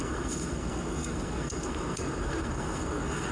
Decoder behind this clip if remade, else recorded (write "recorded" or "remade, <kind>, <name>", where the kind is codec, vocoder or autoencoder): remade, codec, SNAC